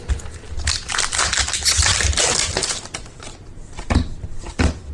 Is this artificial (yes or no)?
no